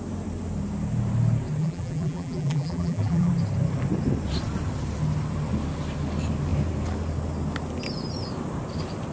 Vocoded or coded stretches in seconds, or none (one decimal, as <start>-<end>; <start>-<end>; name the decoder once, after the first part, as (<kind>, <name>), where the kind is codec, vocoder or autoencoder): 1.6-3.3 (vocoder, BigVGAN v2)